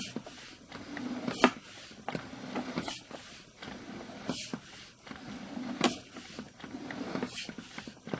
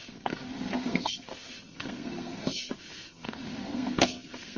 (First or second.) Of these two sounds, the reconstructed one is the second